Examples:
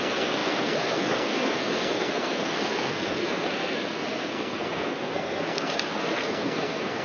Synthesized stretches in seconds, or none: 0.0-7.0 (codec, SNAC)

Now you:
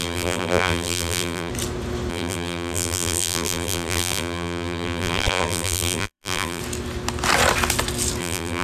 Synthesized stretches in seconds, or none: 0.0-1.5 (vocoder, BigVGAN v2); 2.1-6.6; 8.2-8.6

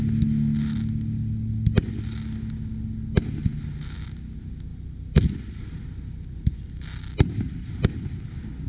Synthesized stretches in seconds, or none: none

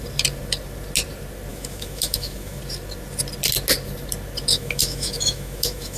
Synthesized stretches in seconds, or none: 1.5-2.6 (autoencoder, DAC-VAE); 4.5-6.0

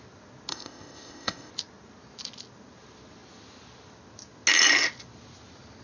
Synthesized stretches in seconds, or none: 0.5-1.5 (codec, ZipCodec)

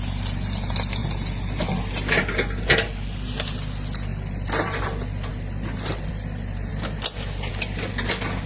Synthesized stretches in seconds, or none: none